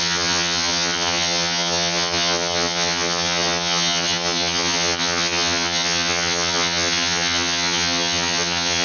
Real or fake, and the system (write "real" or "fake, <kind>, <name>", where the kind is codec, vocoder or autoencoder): fake, vocoder, HiFi-GAN